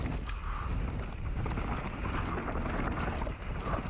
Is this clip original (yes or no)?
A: yes